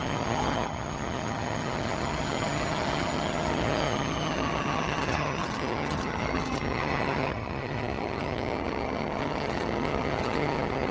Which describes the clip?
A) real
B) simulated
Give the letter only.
B